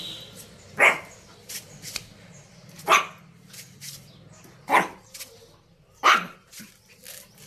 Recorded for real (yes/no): yes